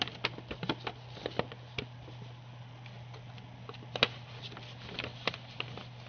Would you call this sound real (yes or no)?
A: yes